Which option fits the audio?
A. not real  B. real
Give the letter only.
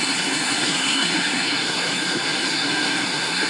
A